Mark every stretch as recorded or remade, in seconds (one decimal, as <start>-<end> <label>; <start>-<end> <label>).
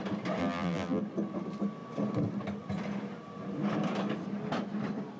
0.0-0.4 recorded; 0.4-1.0 remade; 1.0-5.2 recorded